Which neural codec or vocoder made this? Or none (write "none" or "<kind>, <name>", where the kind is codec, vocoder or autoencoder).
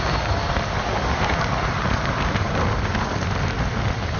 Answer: none